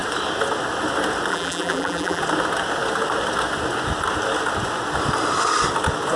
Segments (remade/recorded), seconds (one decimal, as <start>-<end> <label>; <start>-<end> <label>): 0.0-1.3 recorded; 1.3-2.2 remade; 2.2-6.2 recorded